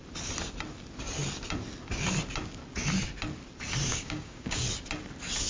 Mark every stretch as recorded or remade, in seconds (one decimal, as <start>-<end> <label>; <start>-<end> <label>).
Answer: 0.0-3.9 recorded; 3.9-4.6 remade; 4.6-5.5 recorded